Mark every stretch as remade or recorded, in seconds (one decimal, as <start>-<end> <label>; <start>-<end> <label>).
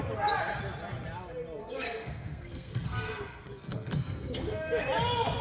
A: 0.0-1.6 recorded; 1.6-4.8 remade; 4.8-5.4 recorded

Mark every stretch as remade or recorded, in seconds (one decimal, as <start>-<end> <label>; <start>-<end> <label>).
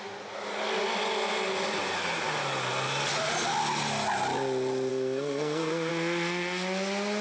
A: 0.0-4.9 recorded; 4.9-5.9 remade; 5.9-7.2 recorded